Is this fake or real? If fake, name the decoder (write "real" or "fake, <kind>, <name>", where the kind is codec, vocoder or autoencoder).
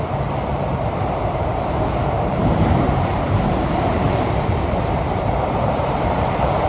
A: fake, vocoder, BigVGAN v2